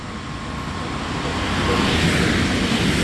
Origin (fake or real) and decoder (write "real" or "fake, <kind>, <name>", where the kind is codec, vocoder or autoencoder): real